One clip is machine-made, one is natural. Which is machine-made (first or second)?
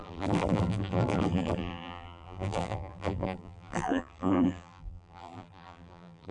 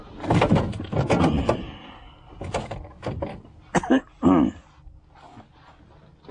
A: first